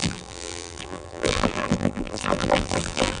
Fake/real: fake